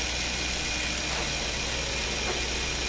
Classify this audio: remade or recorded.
recorded